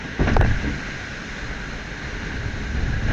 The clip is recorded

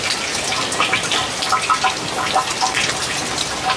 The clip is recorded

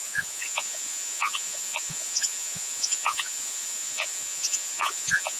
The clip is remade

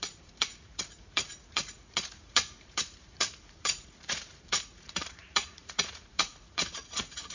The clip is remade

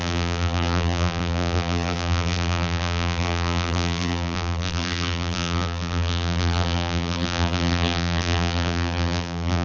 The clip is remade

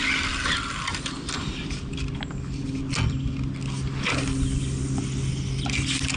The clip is recorded